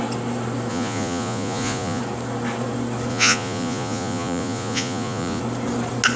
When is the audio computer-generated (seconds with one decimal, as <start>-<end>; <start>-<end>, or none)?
0.7-2.0; 3.1-5.4

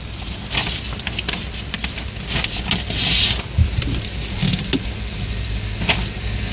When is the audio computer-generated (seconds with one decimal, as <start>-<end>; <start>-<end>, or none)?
none

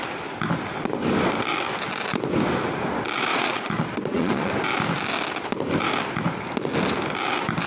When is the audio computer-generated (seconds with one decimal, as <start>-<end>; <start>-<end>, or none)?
3.3-4.5